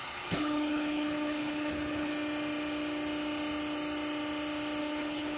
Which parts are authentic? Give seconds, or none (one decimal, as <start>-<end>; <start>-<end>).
2.1-4.8

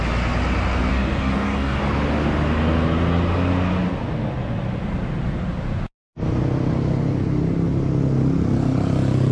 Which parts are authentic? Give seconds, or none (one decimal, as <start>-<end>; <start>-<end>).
0.0-0.9; 1.8-9.3

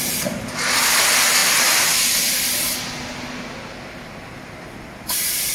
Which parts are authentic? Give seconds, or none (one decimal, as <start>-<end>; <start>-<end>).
0.0-5.5

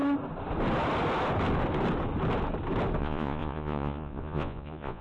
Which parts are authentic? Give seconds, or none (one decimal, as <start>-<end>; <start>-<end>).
0.0-3.0